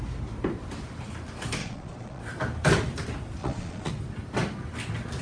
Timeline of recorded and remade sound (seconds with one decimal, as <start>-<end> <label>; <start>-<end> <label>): 0.0-1.6 recorded; 1.6-2.2 remade; 2.2-3.4 recorded; 3.4-3.9 remade; 3.9-5.2 recorded